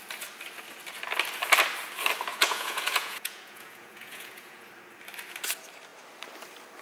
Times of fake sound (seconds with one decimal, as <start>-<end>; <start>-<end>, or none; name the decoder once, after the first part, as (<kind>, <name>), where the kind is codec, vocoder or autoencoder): 2.3-4.7 (vocoder, Vocos)